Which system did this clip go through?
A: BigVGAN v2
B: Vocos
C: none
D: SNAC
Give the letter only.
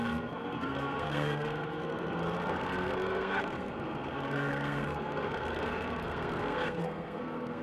D